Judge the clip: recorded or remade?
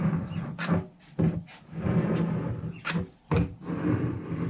recorded